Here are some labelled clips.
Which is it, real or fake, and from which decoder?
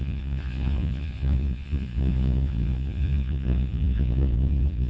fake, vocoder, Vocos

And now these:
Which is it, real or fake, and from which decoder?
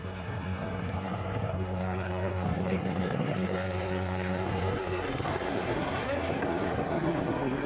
fake, codec, SNAC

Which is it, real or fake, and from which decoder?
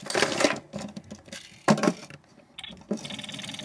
real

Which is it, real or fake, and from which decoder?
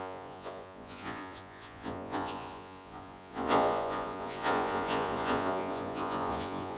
fake, vocoder, Vocos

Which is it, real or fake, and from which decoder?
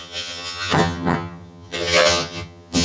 fake, vocoder, HiFi-GAN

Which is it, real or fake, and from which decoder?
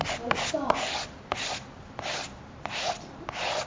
real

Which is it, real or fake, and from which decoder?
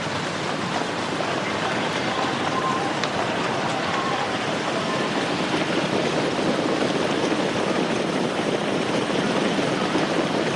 fake, vocoder, BigVGAN v2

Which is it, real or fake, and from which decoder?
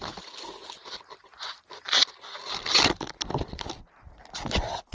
real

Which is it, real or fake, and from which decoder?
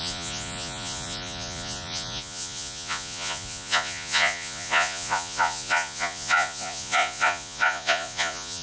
fake, vocoder, Vocos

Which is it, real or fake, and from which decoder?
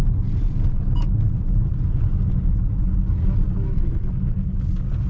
real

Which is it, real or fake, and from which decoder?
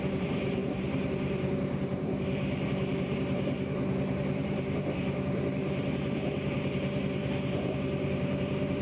fake, vocoder, BigVGAN v2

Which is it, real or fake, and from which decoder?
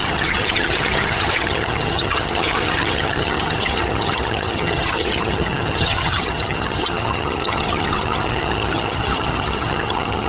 fake, vocoder, HiFi-GAN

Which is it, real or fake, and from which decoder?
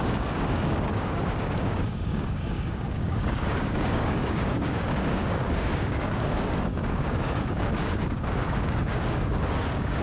fake, codec, DAC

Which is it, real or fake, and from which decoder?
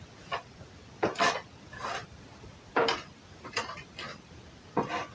real